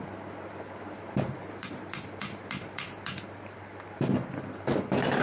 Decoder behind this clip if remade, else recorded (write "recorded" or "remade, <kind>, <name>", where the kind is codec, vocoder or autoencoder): recorded